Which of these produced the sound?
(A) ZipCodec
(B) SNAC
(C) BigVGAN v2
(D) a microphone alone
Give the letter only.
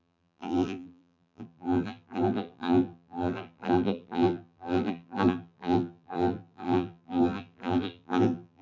C